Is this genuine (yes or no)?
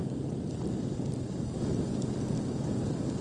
yes